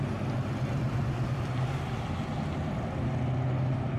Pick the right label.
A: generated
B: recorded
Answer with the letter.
B